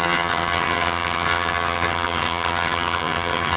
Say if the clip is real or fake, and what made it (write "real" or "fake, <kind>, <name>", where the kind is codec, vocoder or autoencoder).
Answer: fake, vocoder, HiFi-GAN